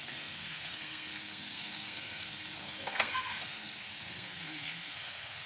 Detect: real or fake fake